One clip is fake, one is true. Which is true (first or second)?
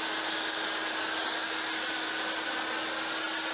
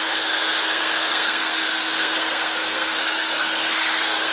first